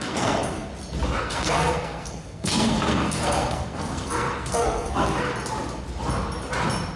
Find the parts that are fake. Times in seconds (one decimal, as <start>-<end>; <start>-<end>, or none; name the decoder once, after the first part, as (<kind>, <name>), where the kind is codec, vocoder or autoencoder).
0.0-0.7 (codec, SNAC); 1.2-5.3